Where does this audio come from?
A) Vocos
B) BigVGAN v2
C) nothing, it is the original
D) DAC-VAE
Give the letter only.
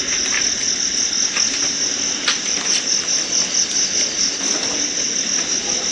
C